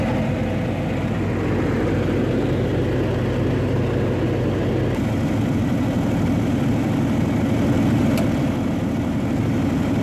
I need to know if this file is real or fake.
real